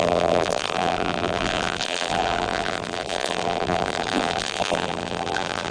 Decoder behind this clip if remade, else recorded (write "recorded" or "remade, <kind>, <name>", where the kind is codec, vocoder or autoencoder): remade, vocoder, BigVGAN v2